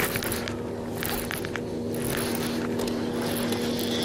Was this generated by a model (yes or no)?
no